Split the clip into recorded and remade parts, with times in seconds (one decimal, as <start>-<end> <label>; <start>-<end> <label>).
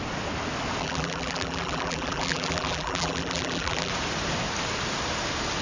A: 0.0-0.8 recorded; 0.8-3.9 remade; 3.9-5.6 recorded